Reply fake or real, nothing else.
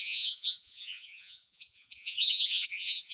fake